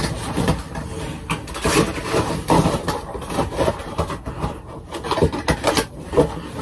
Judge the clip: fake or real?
real